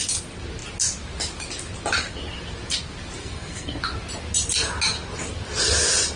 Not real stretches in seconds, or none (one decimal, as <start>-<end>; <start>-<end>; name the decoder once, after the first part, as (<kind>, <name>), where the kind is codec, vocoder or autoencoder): 3.2-3.8 (codec, SNAC)